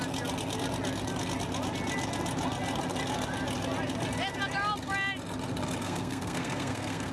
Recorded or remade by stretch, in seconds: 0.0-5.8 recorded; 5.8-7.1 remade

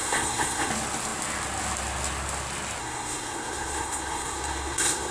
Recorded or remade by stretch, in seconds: 0.0-0.7 remade; 0.7-2.8 recorded; 2.8-5.1 remade

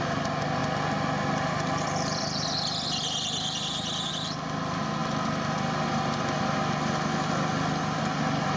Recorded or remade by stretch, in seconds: 0.0-8.6 recorded

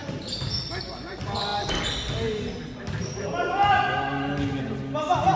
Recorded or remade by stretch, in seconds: 0.0-5.4 recorded